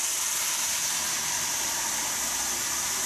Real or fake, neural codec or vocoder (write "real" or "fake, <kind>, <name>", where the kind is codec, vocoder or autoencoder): fake, vocoder, BigVGAN v2